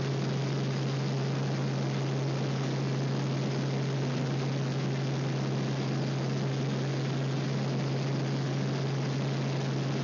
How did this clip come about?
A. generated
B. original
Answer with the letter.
B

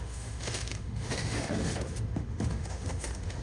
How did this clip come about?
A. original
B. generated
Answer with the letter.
B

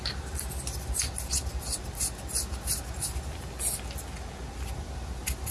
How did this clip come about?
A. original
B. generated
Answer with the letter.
A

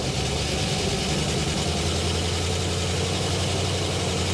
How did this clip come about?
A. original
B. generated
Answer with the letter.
A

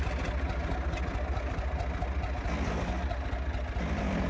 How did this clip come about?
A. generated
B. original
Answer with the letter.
B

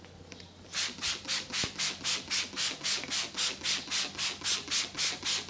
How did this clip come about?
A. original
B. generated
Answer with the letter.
A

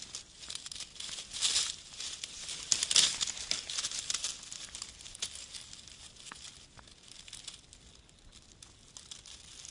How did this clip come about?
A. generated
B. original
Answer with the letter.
B